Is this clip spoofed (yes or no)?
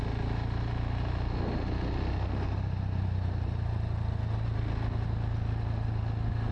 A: no